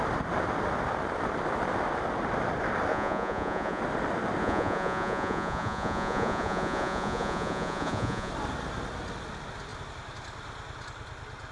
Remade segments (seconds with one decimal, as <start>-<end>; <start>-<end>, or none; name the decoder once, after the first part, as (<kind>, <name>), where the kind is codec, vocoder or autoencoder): 2.9-3.8 (vocoder, Vocos); 4.4-8.3